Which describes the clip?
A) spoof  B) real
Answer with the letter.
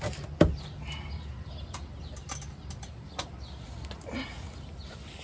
B